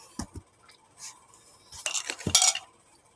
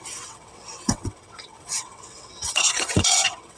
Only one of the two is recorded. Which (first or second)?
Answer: first